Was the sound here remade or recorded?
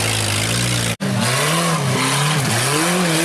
recorded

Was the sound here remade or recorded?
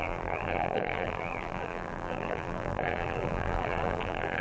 remade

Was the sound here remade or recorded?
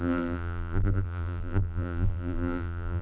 remade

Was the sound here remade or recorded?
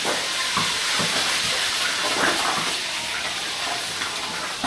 recorded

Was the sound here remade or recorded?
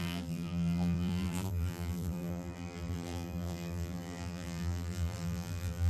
remade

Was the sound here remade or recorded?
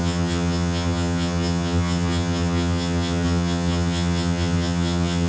remade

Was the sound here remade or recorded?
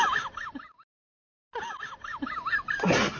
recorded